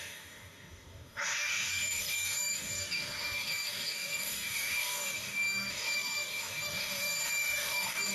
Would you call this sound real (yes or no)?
no